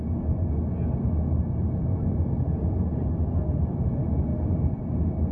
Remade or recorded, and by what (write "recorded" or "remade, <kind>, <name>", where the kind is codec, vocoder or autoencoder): recorded